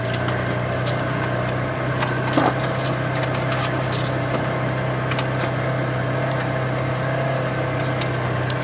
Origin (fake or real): real